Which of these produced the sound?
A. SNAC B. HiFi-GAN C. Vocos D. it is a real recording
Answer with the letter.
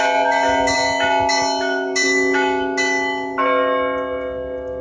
D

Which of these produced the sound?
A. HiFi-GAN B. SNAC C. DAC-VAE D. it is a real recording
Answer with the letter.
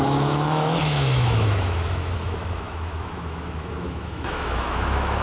C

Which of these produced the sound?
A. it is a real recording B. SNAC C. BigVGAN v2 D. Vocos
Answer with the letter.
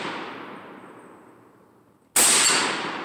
A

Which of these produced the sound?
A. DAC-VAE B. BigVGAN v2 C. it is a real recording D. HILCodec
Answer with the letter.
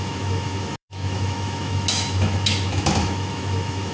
A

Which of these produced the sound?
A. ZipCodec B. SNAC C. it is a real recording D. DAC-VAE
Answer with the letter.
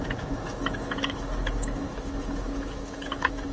D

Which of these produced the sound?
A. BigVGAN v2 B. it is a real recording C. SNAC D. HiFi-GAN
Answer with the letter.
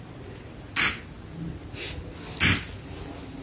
B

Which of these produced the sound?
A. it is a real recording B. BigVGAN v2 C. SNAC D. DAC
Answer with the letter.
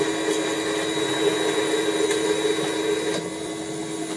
A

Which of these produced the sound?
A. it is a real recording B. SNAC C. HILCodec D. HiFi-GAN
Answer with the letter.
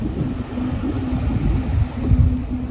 A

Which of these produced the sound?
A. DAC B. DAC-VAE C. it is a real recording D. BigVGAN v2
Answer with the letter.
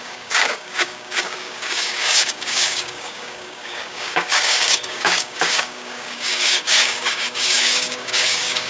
A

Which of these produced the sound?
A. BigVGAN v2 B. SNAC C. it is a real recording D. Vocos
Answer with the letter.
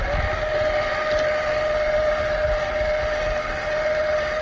C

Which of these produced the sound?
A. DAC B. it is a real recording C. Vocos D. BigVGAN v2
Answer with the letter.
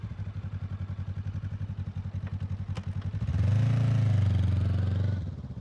B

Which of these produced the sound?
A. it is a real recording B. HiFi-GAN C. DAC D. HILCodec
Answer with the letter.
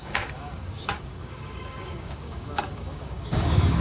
C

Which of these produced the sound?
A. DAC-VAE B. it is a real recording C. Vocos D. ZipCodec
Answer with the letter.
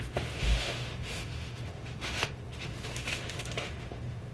A